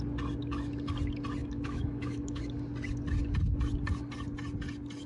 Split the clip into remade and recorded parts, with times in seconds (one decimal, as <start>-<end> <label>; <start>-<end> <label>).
0.0-1.4 recorded; 1.4-2.4 remade; 2.4-5.1 recorded

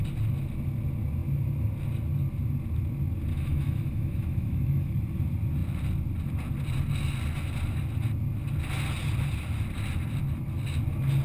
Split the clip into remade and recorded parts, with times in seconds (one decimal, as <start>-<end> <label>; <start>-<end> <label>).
0.0-3.3 recorded; 3.3-4.9 remade; 4.9-11.2 recorded

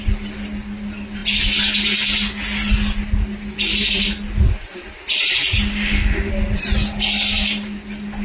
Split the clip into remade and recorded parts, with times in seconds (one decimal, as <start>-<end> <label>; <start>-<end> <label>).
0.0-5.7 recorded; 5.7-6.3 remade; 6.3-8.2 recorded